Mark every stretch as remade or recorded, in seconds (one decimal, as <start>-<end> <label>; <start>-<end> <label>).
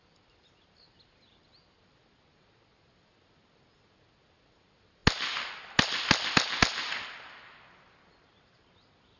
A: 0.0-9.2 recorded